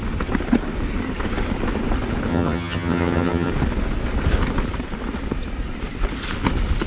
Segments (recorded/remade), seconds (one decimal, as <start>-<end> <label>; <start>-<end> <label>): 0.0-2.3 recorded; 2.3-3.5 remade; 3.5-6.9 recorded